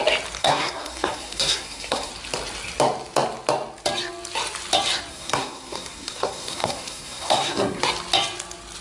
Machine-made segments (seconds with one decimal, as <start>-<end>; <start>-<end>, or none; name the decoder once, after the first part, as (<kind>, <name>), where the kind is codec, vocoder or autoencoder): 0.4-2.1 (codec, SNAC); 5.1-7.8